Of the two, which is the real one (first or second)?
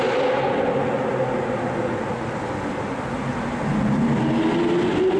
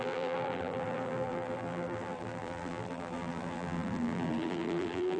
first